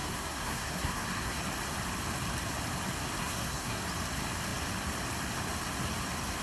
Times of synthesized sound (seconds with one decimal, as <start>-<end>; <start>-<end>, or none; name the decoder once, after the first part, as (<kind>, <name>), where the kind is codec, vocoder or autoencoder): 0.0-1.4 (codec, SNAC); 3.2-3.8